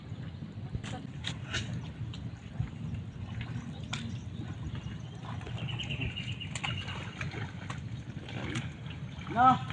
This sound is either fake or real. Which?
real